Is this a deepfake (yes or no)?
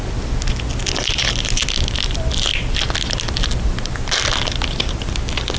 no